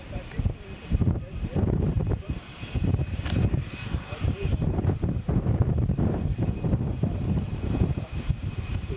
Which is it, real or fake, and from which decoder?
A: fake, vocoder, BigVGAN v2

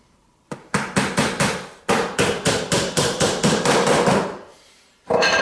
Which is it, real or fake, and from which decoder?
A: fake, vocoder, BigVGAN v2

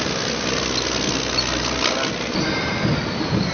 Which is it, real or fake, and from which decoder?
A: real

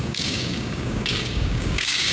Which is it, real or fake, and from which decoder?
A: fake, codec, DAC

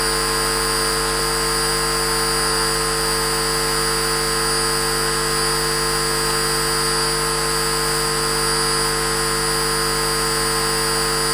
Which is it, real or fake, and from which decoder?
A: real